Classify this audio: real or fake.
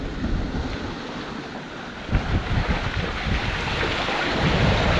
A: real